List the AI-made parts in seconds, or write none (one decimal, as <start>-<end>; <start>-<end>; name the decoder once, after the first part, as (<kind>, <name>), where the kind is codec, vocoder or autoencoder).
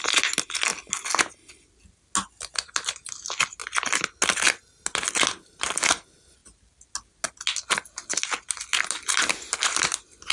none